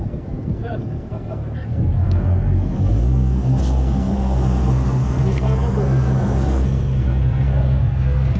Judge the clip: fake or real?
fake